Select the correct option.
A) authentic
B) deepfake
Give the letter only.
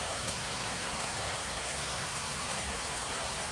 B